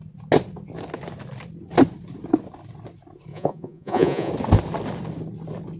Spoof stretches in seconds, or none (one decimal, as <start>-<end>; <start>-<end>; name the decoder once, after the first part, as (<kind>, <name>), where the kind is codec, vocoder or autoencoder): 3.3-4.3 (vocoder, Vocos)